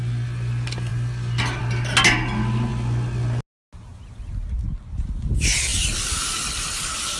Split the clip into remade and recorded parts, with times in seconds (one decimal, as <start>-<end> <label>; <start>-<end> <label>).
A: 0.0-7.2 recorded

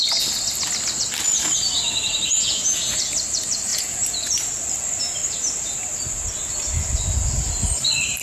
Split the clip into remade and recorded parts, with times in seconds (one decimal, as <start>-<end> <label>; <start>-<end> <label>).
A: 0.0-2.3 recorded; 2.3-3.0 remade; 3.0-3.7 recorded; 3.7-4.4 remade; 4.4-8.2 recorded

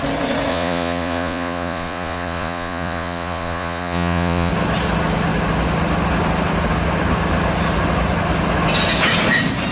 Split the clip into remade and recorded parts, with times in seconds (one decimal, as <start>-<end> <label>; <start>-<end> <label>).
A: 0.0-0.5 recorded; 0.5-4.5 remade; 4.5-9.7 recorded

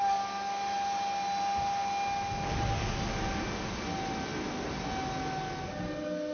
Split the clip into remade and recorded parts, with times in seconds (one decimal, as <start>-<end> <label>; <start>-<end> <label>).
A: 0.0-6.3 recorded

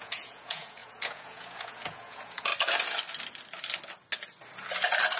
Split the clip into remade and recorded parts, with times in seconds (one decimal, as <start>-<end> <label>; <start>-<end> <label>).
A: 0.0-2.5 remade; 2.5-5.2 recorded